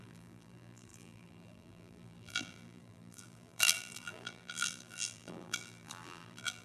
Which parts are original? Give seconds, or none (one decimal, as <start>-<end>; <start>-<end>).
none